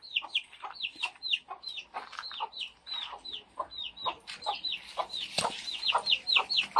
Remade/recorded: recorded